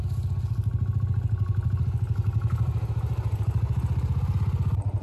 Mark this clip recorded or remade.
recorded